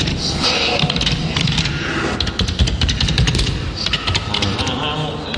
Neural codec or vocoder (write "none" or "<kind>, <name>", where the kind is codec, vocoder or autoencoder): none